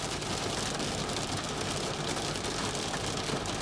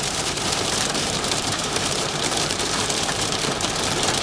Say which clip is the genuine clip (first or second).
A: first